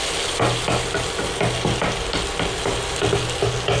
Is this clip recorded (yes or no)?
yes